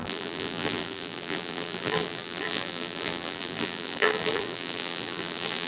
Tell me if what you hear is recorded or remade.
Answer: remade